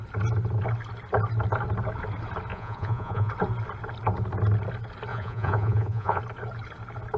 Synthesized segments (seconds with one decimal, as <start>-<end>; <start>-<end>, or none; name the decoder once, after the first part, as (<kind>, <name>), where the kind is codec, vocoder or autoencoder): 2.5-3.3 (vocoder, Vocos); 5.1-6.2